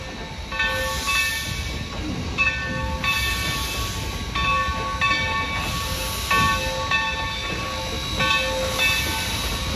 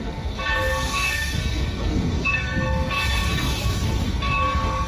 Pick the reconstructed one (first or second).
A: second